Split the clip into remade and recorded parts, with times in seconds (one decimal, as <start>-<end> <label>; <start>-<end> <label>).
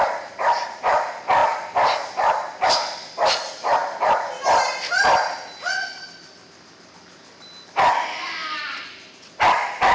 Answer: 0.0-3.8 remade; 3.8-5.7 recorded; 5.7-9.9 remade